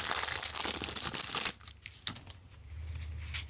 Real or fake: real